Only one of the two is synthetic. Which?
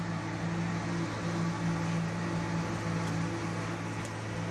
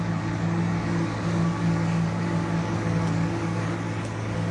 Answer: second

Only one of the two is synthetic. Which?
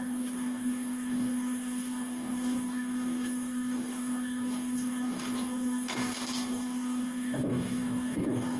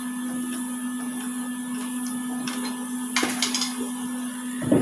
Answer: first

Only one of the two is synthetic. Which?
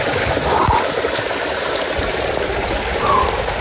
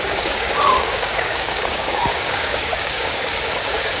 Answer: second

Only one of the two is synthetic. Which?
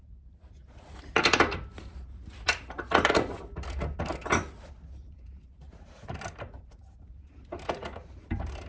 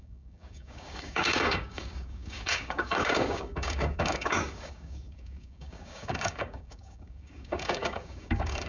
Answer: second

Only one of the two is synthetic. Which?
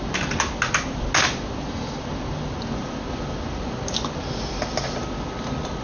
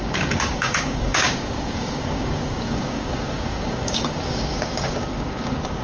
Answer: second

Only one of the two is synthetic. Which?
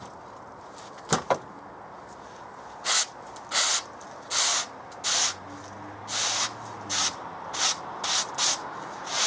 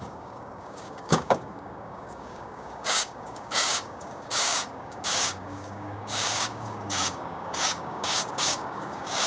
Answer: second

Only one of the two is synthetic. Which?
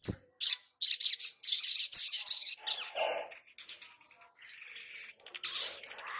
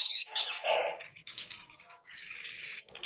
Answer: second